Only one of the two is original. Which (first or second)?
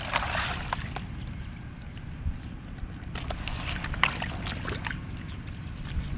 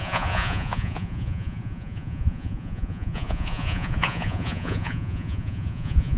first